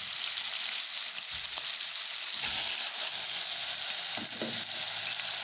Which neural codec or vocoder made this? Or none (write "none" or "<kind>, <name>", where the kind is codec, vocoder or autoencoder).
none